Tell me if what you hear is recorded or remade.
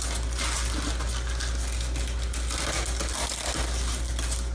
recorded